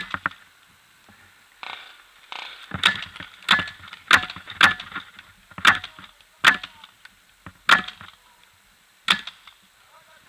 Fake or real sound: real